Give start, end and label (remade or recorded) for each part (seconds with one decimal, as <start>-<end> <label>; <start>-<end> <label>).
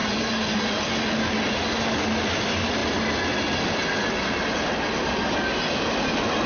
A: 0.0-6.5 recorded